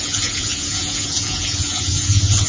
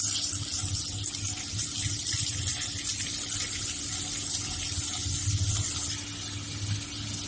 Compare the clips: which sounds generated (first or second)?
first